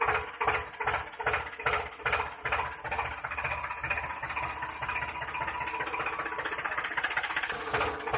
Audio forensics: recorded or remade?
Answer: recorded